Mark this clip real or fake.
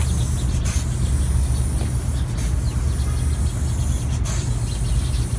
real